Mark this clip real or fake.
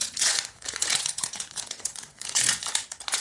fake